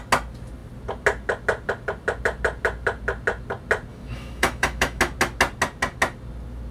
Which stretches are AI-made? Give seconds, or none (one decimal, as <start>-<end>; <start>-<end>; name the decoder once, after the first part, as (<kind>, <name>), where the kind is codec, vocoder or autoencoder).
3.9-5.0 (autoencoder, DAC-VAE)